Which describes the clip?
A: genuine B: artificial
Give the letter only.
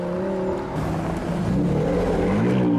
A